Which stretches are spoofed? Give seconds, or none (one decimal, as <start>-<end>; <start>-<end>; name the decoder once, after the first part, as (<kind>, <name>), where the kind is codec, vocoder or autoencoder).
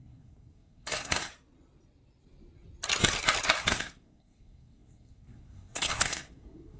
0.0-1.3 (codec, SNAC); 3.6-6.8